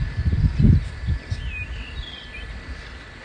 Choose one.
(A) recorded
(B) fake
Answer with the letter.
A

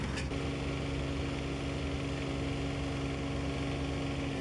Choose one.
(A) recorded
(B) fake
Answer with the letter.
A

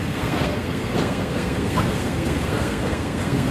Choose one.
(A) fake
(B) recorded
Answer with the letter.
A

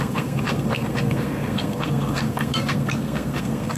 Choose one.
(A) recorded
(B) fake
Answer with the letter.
B